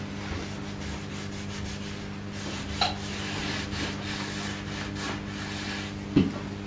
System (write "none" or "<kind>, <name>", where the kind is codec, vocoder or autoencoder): none